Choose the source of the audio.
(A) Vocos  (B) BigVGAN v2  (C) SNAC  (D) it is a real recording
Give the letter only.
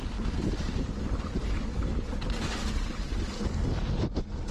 D